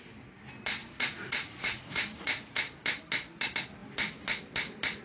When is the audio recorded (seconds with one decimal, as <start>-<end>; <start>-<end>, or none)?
0.0-0.8; 2.4-5.0